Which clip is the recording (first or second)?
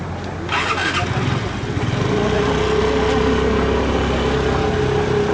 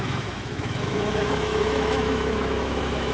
first